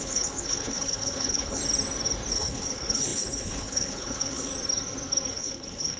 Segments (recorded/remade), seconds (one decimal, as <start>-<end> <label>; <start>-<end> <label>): 0.0-1.6 remade; 1.6-2.3 recorded; 2.3-4.5 remade; 4.5-5.3 recorded; 5.3-6.0 remade